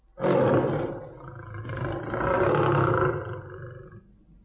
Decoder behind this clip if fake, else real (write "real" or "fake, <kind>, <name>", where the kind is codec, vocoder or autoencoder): real